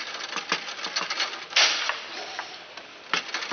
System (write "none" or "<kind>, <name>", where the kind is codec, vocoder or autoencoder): none